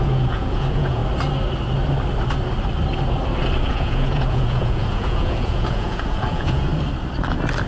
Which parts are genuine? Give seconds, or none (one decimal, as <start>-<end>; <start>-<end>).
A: 1.0-3.7; 6.7-7.7